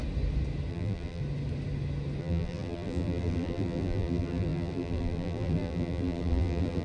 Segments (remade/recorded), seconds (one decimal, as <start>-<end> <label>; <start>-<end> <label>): 0.0-0.7 recorded; 0.7-1.2 remade; 1.2-2.2 recorded; 2.2-6.8 remade